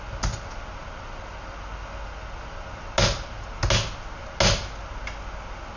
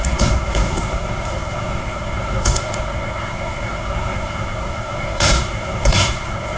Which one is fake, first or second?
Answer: second